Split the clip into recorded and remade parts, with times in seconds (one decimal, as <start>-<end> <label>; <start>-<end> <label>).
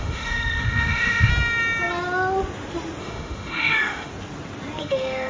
0.0-1.3 remade; 1.3-3.0 recorded; 3.0-4.1 remade; 4.1-4.8 recorded; 4.8-5.3 remade